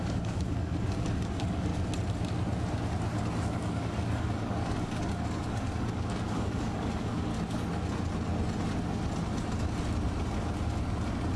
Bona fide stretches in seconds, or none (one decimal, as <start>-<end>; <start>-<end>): 1.7-3.4; 7.3-11.4